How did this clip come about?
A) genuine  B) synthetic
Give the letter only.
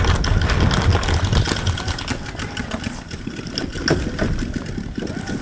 A